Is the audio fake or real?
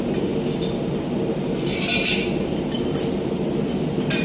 real